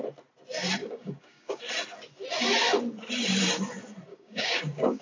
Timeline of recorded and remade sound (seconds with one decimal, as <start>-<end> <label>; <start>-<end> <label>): 0.0-0.8 recorded; 0.8-1.6 remade; 1.6-4.1 recorded; 4.1-5.0 remade